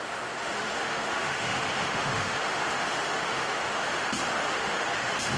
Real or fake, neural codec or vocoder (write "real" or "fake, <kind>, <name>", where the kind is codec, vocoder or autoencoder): fake, autoencoder, DAC-VAE